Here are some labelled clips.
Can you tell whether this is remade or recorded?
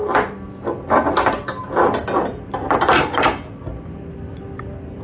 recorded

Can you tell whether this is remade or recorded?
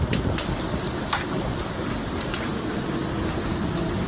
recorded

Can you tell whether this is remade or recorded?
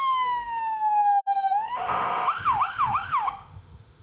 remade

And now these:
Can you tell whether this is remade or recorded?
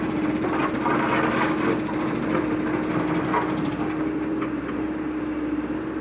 recorded